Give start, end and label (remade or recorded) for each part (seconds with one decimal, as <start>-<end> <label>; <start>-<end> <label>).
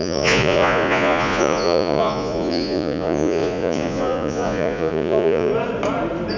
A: 0.0-5.5 remade; 5.5-6.4 recorded